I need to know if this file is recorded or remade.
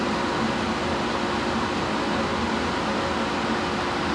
recorded